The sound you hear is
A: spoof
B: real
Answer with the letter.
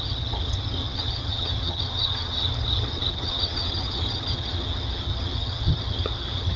A